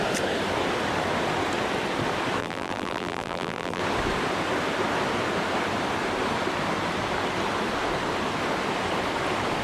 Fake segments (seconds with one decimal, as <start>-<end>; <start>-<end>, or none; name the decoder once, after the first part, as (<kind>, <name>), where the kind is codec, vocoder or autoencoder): 2.4-3.8 (vocoder, BigVGAN v2)